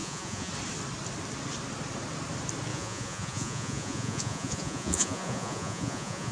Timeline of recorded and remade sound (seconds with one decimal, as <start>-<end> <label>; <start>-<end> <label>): 0.0-0.5 remade; 0.5-2.7 recorded; 2.7-6.3 remade